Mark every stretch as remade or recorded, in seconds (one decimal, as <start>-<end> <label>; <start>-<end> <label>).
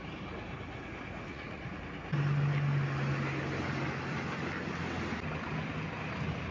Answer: 0.0-1.3 recorded; 1.3-1.8 remade; 1.8-6.5 recorded